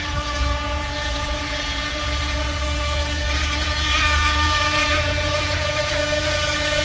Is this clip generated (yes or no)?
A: yes